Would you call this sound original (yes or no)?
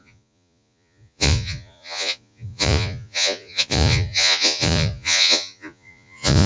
no